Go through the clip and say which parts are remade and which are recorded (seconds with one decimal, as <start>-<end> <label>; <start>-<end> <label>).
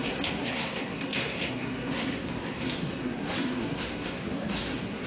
0.0-5.1 remade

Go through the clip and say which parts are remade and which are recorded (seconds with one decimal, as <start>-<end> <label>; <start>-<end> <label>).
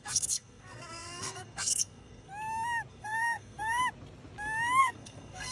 0.0-2.3 remade; 2.3-2.9 recorded; 2.9-3.8 remade; 3.8-4.8 recorded; 4.8-5.5 remade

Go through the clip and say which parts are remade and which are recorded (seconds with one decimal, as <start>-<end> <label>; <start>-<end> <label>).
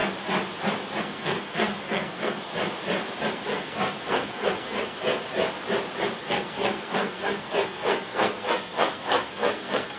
0.0-1.0 recorded; 1.0-2.5 remade; 2.5-3.3 recorded; 3.3-5.0 remade; 5.0-6.2 recorded; 6.2-10.0 remade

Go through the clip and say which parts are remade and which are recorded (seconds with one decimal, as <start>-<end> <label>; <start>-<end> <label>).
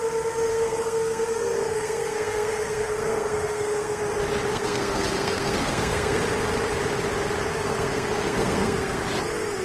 0.0-0.5 recorded; 0.5-4.0 remade; 4.0-4.5 recorded; 4.5-6.2 remade; 6.2-7.5 recorded; 7.5-9.0 remade; 9.0-9.6 recorded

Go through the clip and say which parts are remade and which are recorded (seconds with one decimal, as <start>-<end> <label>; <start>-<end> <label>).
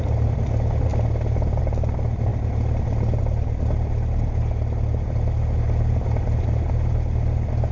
0.0-7.7 recorded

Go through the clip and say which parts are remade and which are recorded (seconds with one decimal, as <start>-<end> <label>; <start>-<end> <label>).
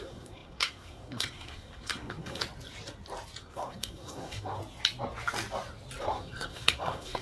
0.0-2.4 remade; 2.4-3.4 recorded; 3.4-4.6 remade; 4.6-6.0 recorded; 6.0-7.2 remade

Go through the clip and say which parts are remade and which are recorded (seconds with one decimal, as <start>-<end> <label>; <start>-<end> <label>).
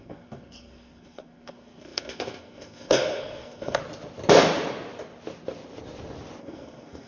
0.0-3.8 remade; 3.8-6.4 recorded; 6.4-7.1 remade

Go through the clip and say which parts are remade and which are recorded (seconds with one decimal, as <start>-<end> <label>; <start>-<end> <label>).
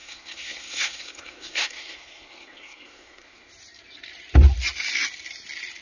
0.0-3.5 remade; 3.5-5.8 recorded